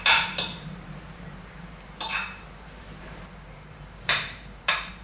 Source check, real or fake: fake